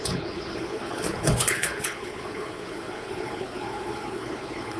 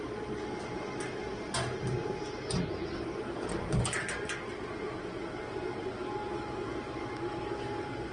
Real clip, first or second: second